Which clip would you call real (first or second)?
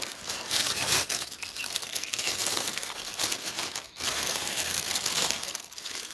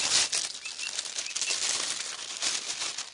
second